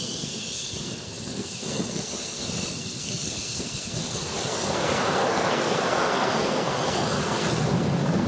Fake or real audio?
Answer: fake